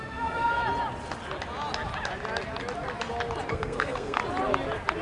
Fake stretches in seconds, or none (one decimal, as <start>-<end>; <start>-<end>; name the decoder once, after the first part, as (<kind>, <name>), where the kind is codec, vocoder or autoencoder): 0.0-0.6 (codec, SNAC); 3.5-4.2